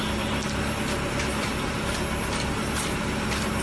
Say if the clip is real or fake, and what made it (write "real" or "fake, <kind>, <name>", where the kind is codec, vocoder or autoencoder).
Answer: real